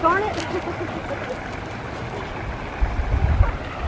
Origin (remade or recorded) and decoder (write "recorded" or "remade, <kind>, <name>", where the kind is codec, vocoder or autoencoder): recorded